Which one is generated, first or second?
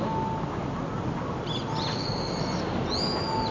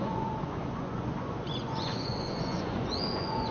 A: second